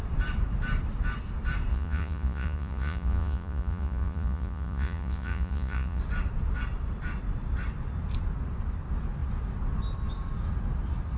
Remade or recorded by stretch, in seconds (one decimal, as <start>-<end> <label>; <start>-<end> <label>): 0.0-1.7 recorded; 1.7-6.0 remade; 6.0-11.2 recorded